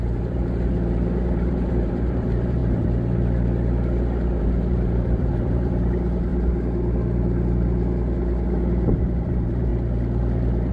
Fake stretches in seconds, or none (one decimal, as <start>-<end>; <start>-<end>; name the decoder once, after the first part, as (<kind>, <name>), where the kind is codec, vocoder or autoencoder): 0.0-2.6 (vocoder, BigVGAN v2); 4.4-6.3; 8.9-9.7